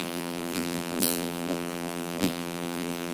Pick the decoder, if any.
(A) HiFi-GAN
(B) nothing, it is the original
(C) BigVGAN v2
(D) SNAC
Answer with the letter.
C